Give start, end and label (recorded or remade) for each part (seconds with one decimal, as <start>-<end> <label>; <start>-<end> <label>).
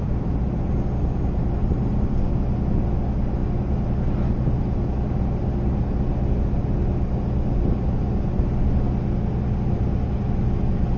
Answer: 0.0-11.0 recorded